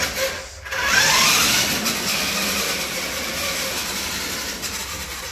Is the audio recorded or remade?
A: remade